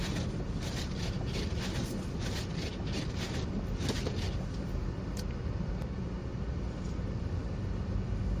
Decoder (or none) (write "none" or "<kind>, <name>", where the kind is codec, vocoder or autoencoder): none